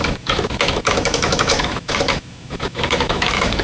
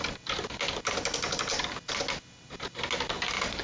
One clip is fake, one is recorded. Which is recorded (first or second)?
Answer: second